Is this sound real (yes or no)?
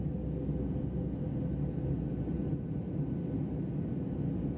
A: yes